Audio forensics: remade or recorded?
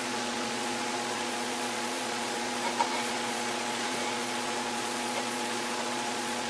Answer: remade